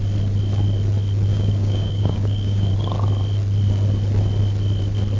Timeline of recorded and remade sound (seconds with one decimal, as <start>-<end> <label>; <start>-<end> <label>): 0.0-1.3 recorded; 1.3-2.7 remade; 2.7-5.2 recorded